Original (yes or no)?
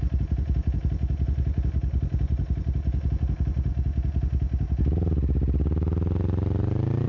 yes